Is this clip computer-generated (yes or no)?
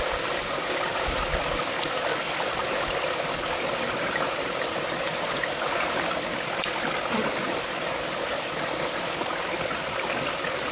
no